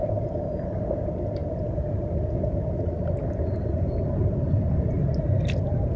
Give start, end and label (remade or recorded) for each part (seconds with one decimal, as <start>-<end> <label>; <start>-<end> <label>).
0.0-6.0 recorded